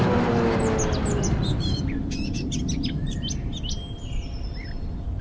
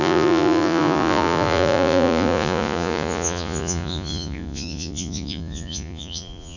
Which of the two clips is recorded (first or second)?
first